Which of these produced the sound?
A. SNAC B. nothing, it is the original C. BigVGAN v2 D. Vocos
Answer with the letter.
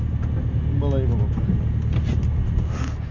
B